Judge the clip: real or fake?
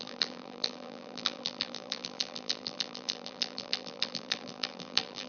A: fake